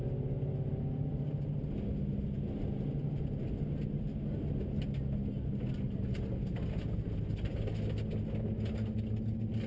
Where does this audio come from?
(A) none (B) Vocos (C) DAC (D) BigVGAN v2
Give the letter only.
A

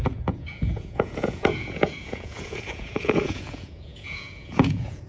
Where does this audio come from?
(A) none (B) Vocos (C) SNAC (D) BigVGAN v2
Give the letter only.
B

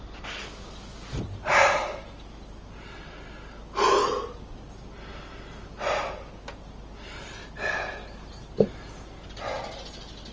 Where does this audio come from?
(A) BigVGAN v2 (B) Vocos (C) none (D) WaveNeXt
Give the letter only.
C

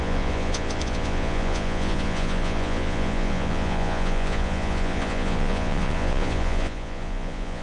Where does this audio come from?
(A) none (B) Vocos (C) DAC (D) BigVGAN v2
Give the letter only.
B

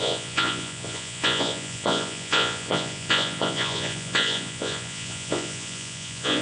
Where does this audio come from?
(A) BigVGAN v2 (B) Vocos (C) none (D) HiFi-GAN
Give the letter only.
B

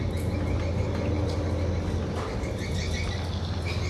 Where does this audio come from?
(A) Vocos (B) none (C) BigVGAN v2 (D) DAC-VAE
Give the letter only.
B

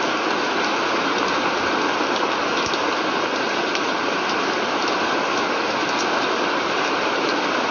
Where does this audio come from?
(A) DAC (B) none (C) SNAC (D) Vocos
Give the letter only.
B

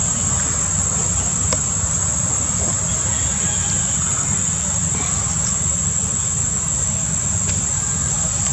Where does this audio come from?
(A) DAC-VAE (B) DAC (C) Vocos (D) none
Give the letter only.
D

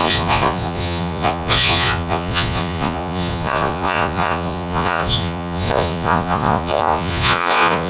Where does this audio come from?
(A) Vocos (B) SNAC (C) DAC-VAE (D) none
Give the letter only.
A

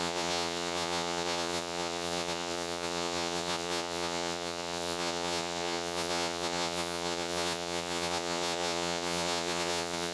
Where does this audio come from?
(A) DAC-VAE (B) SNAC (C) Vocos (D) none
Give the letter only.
C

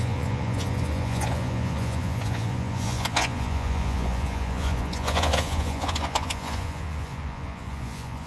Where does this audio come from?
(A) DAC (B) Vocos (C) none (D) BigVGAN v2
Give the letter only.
B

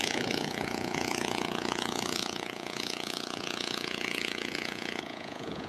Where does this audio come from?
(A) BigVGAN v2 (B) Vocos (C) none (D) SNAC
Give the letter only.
B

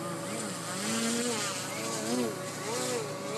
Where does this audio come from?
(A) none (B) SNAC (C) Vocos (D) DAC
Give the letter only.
A